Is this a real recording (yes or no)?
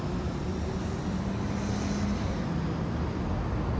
yes